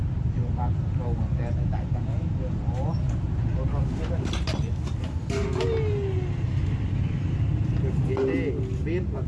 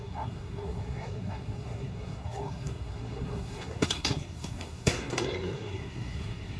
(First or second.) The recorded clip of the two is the first